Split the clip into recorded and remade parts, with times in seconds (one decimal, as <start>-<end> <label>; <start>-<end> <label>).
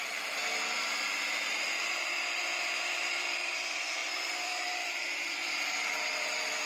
0.0-0.4 remade; 0.4-1.3 recorded; 1.3-6.7 remade